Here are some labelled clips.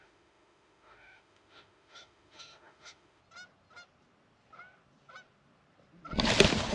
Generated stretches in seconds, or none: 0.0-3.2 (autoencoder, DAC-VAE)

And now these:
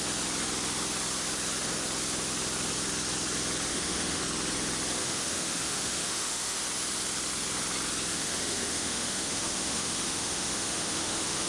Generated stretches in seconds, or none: 3.7-4.2 (autoencoder, DAC-VAE); 5.0-6.6; 8.1-11.5

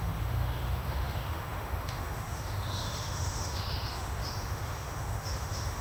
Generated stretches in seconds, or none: 0.0-5.8 (autoencoder, DAC-VAE)

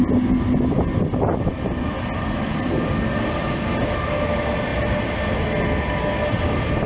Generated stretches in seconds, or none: none